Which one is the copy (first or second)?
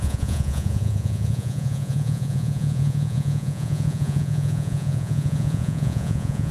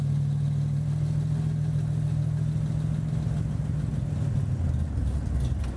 first